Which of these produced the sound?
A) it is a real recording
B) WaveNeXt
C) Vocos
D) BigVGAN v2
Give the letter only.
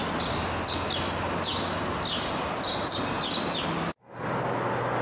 A